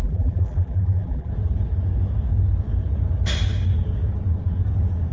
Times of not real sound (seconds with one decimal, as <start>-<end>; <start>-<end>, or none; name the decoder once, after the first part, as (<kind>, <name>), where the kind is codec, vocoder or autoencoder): 0.0-1.3 (vocoder, BigVGAN v2)